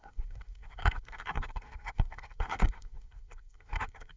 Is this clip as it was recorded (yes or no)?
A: no